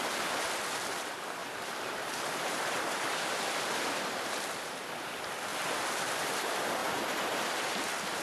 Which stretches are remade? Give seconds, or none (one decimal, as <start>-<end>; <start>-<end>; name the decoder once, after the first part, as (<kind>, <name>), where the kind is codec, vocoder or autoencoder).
1.4-3.0 (vocoder, BigVGAN v2); 6.8-7.5